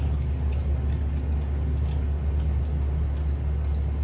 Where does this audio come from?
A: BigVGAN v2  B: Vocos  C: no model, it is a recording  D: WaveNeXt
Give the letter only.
C